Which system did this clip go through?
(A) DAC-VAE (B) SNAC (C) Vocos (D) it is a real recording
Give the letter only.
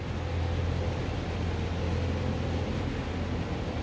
D